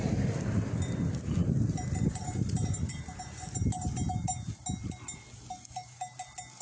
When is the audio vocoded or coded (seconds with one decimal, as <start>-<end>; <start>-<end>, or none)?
1.4-3.2